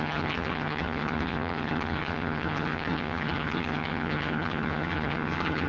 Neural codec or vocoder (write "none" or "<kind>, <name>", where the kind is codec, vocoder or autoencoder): vocoder, HiFi-GAN